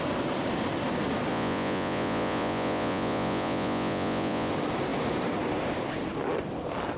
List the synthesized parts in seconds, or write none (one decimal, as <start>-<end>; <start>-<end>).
1.3-4.5